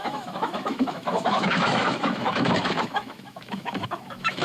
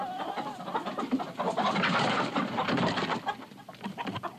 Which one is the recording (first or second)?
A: second